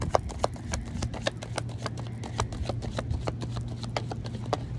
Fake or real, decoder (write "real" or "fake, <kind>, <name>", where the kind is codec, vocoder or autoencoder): real